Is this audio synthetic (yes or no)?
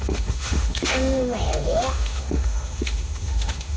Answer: yes